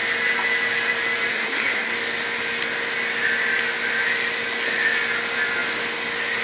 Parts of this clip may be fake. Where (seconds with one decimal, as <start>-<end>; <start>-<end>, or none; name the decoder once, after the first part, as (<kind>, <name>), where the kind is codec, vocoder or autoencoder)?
1.3-1.9 (codec, SNAC)